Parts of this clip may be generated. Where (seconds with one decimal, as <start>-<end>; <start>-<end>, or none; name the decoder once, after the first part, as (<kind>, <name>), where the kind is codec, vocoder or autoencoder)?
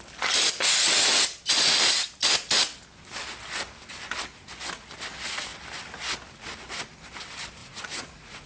7.6-8.5 (vocoder, Vocos)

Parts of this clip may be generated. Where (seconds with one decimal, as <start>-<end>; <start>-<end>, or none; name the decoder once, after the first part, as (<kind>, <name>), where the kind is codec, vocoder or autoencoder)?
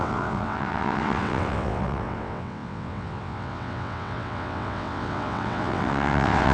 0.0-6.5 (vocoder, WaveNeXt)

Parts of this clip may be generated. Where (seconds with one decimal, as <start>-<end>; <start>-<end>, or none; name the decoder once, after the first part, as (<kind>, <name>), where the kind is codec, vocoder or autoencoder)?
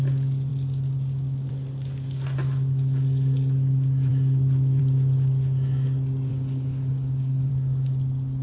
6.3-7.5 (codec, HILCodec)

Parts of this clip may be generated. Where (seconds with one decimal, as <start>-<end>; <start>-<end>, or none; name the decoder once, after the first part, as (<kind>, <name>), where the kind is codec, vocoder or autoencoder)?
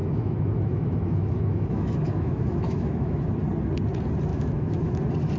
0.0-3.2 (autoencoder, DAC-VAE); 4.3-5.0